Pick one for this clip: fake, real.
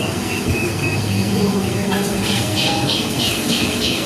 fake